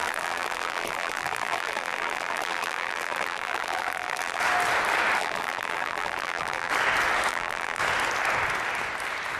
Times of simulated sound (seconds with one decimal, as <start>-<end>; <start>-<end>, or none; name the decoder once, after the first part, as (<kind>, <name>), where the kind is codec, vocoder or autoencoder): 0.0-4.4 (vocoder, BigVGAN v2); 5.2-6.7; 7.3-7.8